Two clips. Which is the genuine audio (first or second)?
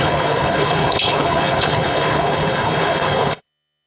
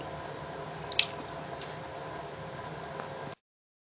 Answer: second